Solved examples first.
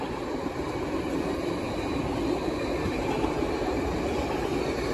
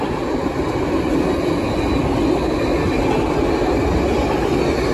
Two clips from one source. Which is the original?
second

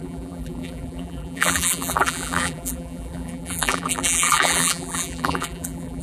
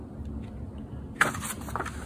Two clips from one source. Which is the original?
second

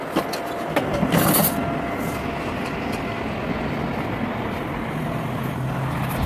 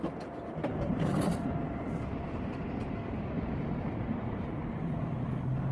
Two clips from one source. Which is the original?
first